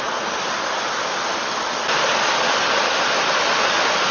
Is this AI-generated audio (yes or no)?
no